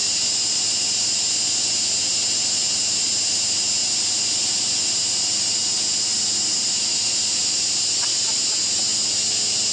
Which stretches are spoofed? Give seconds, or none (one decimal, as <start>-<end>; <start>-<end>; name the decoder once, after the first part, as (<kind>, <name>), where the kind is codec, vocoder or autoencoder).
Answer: none